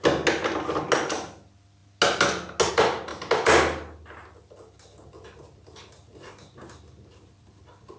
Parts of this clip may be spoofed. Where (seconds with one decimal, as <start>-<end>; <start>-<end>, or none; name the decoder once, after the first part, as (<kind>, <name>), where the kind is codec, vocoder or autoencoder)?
none

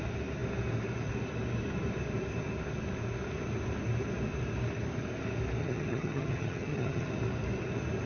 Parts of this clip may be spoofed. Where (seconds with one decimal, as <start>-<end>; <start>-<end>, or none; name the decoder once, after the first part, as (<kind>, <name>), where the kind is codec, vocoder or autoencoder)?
5.6-7.1 (vocoder, HiFi-GAN)

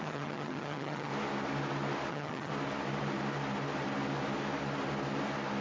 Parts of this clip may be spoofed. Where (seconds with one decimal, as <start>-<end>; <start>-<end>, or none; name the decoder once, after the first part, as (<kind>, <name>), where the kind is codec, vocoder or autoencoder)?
0.0-1.1 (vocoder, HiFi-GAN); 2.1-2.5

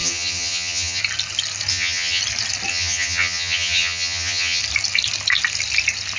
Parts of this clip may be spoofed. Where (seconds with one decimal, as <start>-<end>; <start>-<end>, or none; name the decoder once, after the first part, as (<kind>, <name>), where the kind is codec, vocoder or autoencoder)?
0.0-1.0 (vocoder, HiFi-GAN); 1.7-2.2; 2.7-4.6

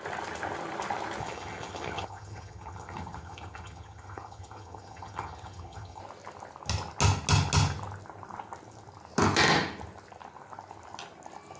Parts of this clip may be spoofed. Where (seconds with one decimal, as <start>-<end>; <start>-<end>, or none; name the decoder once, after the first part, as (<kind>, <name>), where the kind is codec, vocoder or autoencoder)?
1.2-6.0 (vocoder, HiFi-GAN)

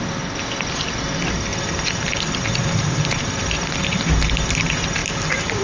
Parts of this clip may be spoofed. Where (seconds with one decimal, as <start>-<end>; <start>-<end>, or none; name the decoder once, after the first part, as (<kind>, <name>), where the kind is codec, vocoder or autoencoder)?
none

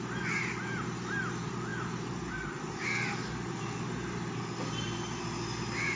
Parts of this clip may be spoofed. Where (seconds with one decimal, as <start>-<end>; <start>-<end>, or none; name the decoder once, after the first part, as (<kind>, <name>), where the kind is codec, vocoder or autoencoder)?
none